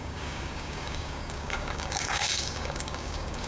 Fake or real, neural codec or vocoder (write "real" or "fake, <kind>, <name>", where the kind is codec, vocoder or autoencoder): fake, codec, DAC